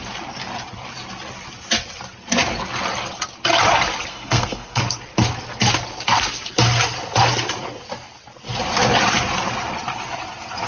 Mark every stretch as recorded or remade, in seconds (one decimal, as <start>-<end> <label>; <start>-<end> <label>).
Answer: 0.0-4.1 recorded; 4.1-4.8 remade; 4.8-10.7 recorded